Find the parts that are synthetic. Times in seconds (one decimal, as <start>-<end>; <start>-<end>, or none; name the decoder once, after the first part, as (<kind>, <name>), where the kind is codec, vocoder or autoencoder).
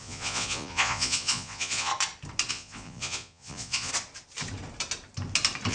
0.0-1.9 (vocoder, Vocos); 2.5-3.9